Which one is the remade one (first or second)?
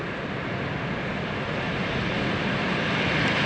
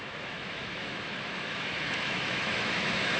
second